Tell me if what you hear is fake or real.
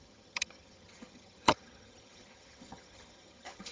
fake